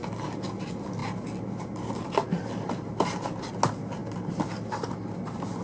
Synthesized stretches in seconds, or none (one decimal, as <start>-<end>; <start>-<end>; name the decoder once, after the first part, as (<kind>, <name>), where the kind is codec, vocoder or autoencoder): none

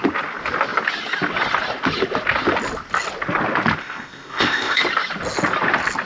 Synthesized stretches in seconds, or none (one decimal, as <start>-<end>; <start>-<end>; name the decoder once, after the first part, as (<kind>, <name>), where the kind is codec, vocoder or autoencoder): 3.8-4.8 (codec, ZipCodec)

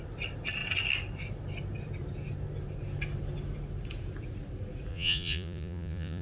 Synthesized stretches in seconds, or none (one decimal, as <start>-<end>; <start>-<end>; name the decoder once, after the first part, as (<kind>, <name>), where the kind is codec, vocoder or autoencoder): 4.9-6.2 (vocoder, Vocos)

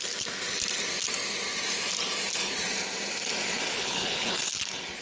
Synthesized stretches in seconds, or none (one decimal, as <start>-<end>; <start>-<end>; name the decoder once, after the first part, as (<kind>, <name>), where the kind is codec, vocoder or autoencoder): 3.7-4.3 (codec, HILCodec)

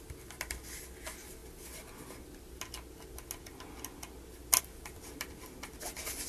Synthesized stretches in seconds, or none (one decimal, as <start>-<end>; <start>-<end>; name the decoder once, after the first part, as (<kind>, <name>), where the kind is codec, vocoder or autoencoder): none

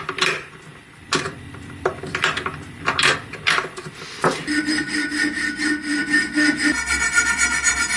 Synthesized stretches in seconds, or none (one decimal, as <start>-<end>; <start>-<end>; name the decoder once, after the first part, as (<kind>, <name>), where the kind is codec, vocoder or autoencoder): 0.0-6.0 (vocoder, BigVGAN v2)